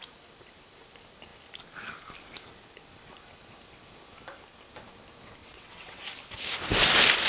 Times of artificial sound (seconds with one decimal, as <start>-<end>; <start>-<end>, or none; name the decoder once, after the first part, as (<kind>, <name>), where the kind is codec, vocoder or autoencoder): 5.4-6.0 (vocoder, WaveNeXt)